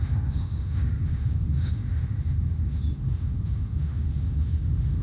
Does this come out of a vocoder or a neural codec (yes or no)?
yes